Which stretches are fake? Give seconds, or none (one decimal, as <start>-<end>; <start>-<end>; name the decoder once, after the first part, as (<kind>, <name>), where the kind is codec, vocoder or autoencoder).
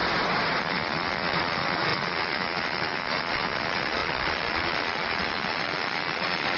0.6-6.6 (vocoder, Vocos)